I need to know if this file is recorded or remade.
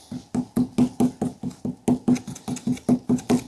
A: recorded